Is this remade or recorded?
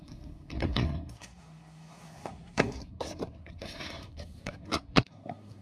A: remade